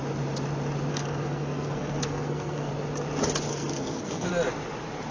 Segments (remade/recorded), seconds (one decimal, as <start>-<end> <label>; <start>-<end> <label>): 0.0-0.9 recorded; 0.9-2.7 remade; 2.7-3.5 recorded; 3.5-4.3 remade; 4.3-5.1 recorded